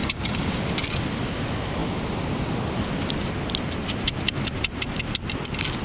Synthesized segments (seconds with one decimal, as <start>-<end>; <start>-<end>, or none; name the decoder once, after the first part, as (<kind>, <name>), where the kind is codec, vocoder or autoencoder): 0.0-0.6 (codec, DAC)